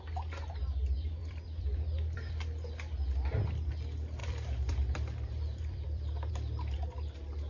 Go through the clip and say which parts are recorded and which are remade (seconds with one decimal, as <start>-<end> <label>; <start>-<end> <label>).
0.0-1.2 recorded; 1.2-2.3 remade; 2.3-4.2 recorded; 4.2-6.3 remade; 6.3-7.5 recorded